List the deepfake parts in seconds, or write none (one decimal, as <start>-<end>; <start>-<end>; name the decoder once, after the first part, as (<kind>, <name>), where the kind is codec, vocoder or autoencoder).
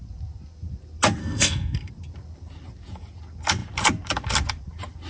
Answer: 1.2-1.9 (codec, SNAC)